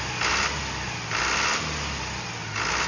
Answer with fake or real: real